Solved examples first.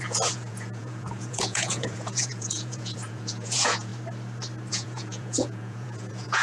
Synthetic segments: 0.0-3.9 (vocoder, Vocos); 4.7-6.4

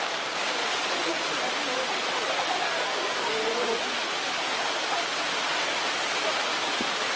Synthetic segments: 0.0-0.6 (codec, DAC); 2.9-3.4

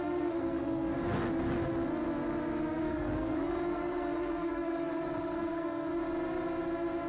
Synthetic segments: 0.0-0.9 (codec, SNAC); 2.9-5.9

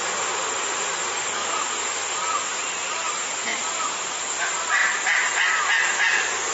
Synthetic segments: 1.4-3.1 (vocoder, BigVGAN v2)

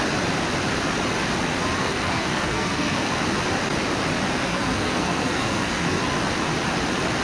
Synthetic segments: 1.8-3.1 (codec, SNAC); 4.4-6.0

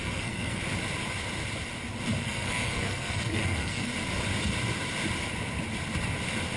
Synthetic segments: 0.0-0.6 (codec, SNAC); 2.2-3.9

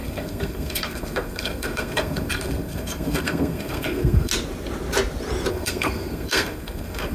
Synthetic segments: 0.0-4.3 (codec, SNAC); 5.5-7.1

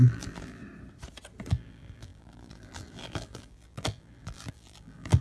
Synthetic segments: 0.0-0.6 (vocoder, BigVGAN v2); 1.5-5.2